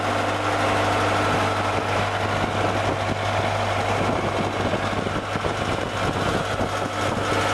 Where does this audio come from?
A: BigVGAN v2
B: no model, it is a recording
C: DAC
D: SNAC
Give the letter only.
B